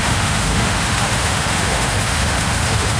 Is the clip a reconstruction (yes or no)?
yes